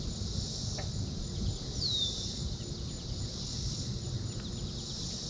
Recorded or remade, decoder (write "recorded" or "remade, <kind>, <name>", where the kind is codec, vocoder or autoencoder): recorded